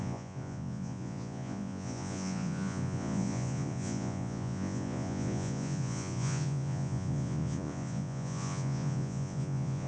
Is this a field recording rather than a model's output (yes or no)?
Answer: no